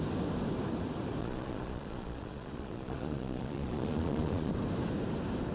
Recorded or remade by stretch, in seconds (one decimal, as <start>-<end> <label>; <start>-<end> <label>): 0.0-1.2 recorded; 1.2-4.5 remade; 4.5-5.5 recorded